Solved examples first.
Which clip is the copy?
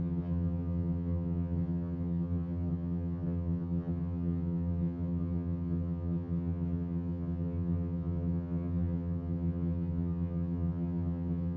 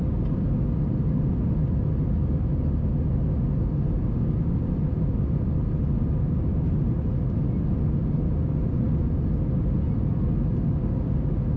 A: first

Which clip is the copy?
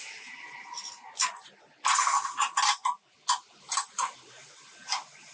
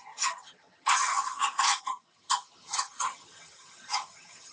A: second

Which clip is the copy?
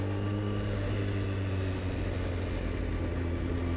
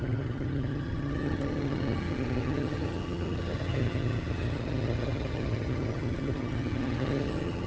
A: second